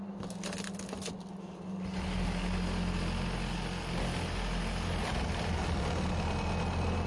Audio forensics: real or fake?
real